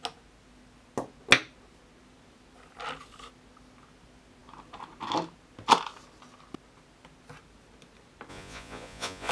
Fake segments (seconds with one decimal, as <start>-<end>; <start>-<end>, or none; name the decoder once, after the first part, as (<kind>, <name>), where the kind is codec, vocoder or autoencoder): 8.3-9.3 (vocoder, Vocos)